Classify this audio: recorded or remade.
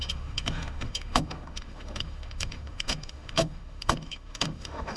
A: remade